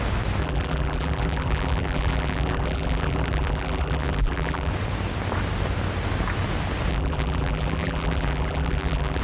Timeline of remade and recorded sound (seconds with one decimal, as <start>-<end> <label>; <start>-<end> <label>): 0.0-0.4 recorded; 0.4-4.7 remade; 4.7-6.9 recorded; 6.9-9.2 remade